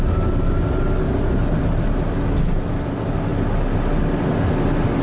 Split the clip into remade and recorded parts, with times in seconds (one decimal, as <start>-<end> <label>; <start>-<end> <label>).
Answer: 0.0-5.0 recorded